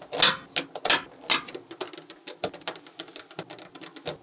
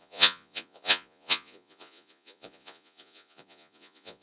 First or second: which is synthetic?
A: second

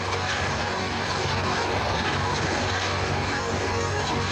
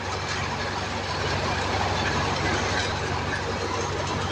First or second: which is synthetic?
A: first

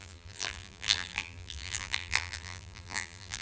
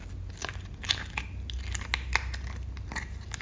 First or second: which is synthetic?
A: first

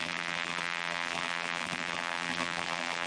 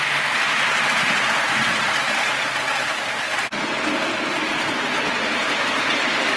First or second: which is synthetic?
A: first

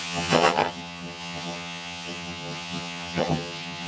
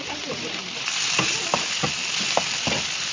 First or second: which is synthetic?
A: first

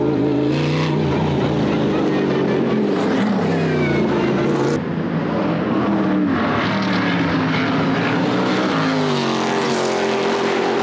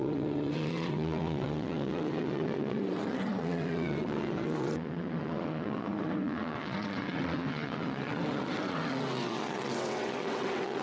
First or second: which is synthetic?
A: second